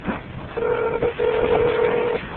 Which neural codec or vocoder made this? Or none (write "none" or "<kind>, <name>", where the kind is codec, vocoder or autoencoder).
none